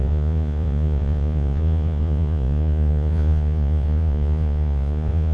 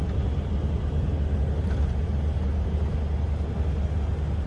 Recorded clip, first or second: second